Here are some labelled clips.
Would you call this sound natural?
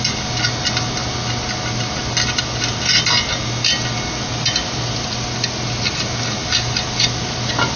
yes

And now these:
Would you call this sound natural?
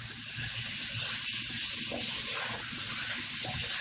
yes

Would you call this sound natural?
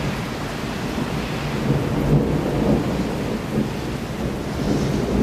yes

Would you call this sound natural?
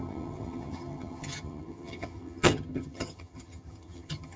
no